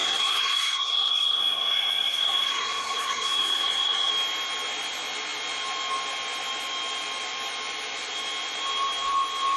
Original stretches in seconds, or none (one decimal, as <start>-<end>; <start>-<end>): 4.1-9.6

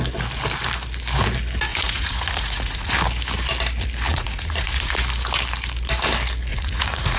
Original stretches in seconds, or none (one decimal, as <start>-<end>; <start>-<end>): 0.0-1.7; 2.9-4.1; 4.9-6.5

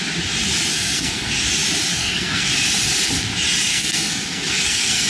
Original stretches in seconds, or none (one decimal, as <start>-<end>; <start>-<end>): 0.0-0.7; 1.4-1.9; 2.5-3.7

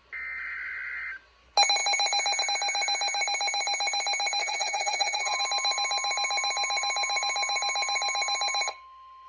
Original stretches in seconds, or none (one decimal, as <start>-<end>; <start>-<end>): 0.0-4.4; 5.4-9.3